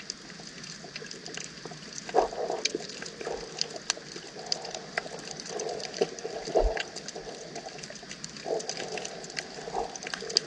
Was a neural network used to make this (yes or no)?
no